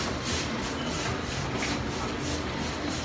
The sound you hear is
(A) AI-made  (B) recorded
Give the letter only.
B